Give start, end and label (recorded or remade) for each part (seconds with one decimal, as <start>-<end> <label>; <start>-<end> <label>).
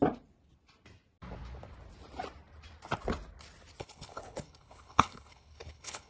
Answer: 0.0-3.8 recorded; 3.8-6.1 remade